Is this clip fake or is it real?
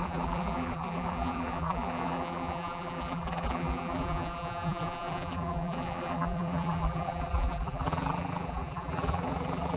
fake